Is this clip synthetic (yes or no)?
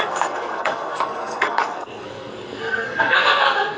yes